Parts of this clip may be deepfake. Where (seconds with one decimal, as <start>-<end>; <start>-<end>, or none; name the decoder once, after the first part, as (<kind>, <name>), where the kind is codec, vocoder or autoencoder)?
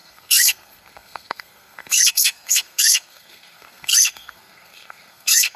0.0-5.6 (codec, SNAC)